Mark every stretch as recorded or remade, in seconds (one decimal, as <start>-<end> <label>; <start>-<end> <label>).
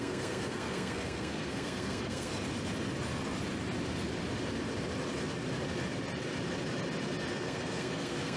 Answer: 0.0-2.3 remade; 2.3-7.3 recorded; 7.3-8.4 remade